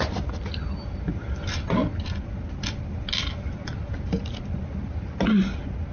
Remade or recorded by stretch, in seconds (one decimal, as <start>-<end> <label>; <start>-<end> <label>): 0.0-5.9 recorded